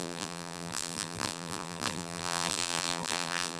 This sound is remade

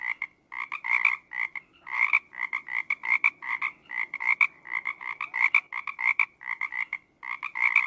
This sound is remade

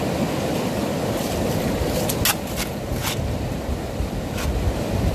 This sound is recorded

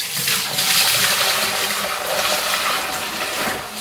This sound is recorded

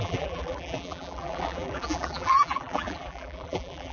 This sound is remade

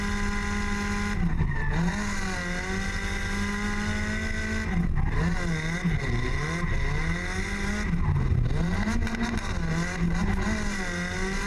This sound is recorded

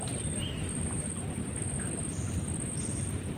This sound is recorded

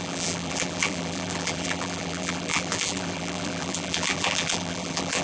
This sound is remade